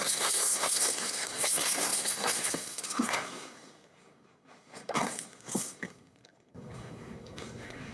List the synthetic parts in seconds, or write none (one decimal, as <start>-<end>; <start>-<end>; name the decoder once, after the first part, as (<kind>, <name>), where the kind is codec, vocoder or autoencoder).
0.0-7.9 (codec, SNAC)